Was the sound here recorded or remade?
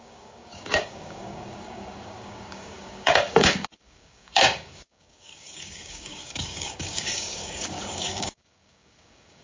remade